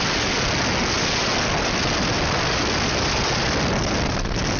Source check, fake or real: real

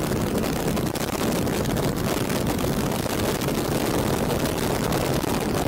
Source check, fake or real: real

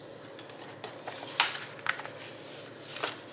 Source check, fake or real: real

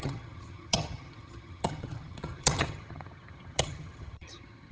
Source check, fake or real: fake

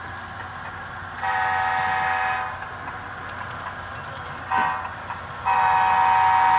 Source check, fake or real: real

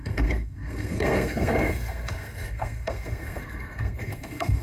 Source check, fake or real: fake